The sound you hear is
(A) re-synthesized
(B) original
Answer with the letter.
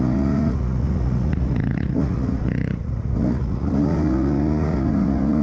A